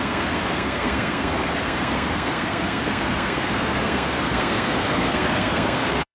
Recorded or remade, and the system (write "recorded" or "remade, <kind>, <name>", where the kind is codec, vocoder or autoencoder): remade, codec, SNAC